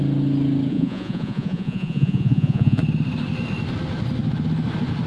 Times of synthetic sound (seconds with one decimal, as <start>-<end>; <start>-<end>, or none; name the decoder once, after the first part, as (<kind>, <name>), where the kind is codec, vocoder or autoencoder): 0.7-2.8 (vocoder, Vocos)